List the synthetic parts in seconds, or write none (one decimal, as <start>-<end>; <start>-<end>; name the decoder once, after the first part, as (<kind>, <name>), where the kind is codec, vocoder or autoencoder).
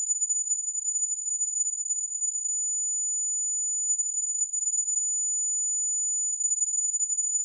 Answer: 0.0-2.5 (vocoder, Vocos); 3.9-5.0; 6.3-7.4